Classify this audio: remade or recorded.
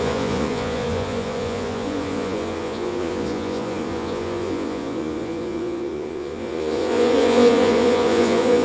remade